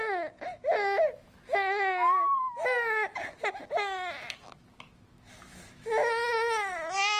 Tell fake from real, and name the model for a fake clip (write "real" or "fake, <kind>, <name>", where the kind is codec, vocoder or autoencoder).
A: fake, autoencoder, DAC-VAE